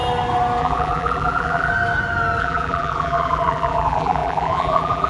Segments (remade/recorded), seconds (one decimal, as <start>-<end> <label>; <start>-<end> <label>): 0.0-0.6 recorded; 0.6-1.7 remade; 1.7-2.4 recorded; 2.4-5.1 remade